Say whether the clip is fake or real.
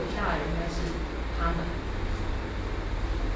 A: real